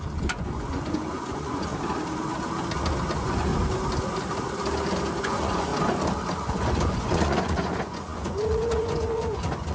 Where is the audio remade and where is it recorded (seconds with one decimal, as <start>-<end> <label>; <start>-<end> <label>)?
0.0-1.7 remade; 1.7-3.1 recorded; 3.1-3.5 remade; 3.5-5.2 recorded; 5.2-5.7 remade; 5.7-6.3 recorded; 6.3-9.7 remade